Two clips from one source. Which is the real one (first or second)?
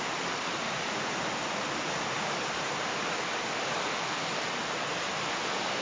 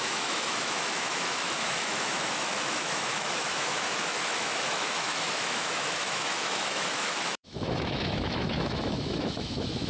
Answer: first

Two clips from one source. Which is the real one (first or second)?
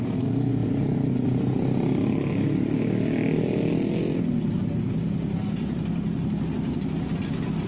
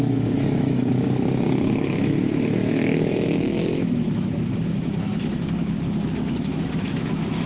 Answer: first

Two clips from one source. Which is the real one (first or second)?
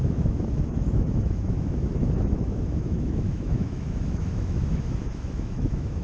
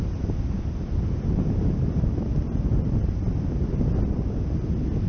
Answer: second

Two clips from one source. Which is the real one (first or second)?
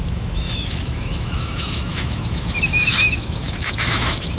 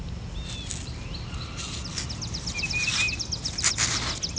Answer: second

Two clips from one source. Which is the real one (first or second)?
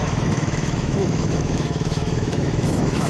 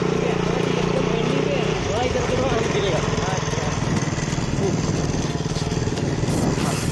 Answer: second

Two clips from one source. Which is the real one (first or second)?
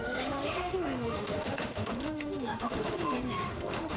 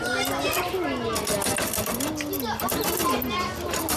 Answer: second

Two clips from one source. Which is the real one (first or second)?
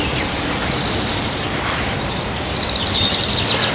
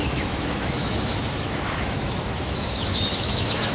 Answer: first